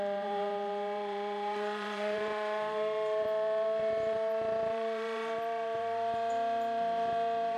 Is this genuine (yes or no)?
no